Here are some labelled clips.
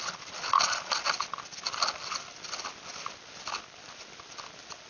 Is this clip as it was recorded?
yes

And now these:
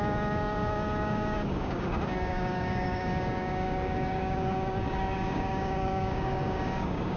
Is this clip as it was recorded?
no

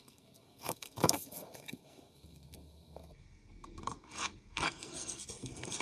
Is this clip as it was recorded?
no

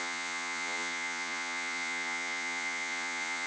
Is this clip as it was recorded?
no